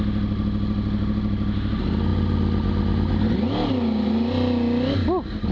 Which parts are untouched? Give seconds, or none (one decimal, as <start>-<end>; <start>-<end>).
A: 0.0-5.5